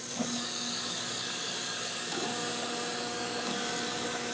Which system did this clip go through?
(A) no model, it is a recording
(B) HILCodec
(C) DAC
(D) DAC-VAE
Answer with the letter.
C